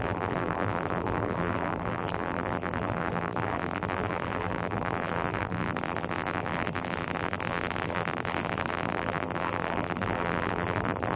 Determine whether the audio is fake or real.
fake